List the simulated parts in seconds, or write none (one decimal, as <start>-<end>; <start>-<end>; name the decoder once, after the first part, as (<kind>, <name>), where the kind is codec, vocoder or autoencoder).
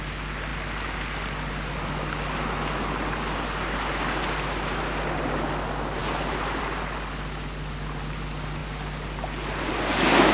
none